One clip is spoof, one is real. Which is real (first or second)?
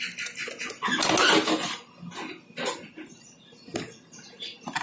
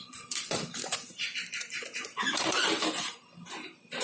first